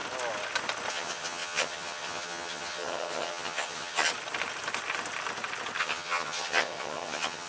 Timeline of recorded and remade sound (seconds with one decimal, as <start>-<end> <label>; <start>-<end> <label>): 0.0-0.9 recorded; 0.9-4.1 remade; 4.1-5.8 recorded; 5.8-7.5 remade